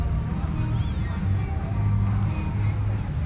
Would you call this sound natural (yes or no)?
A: yes